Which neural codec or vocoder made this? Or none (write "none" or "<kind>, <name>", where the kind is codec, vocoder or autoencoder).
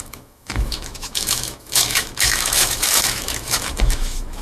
autoencoder, DAC-VAE